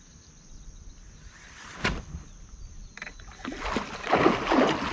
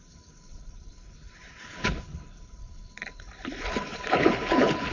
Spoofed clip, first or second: second